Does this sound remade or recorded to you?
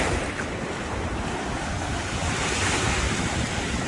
recorded